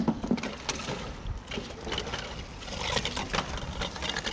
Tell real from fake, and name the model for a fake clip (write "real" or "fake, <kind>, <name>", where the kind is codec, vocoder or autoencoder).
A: real